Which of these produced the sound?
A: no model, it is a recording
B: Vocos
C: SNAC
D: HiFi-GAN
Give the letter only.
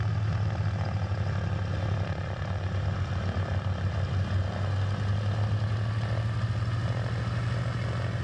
A